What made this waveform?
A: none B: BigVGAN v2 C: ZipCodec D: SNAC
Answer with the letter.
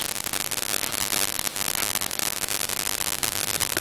B